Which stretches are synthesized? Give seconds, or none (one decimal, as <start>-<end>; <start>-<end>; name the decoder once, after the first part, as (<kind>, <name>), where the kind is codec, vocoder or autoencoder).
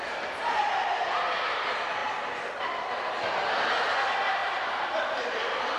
none